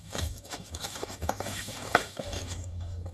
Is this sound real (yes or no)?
no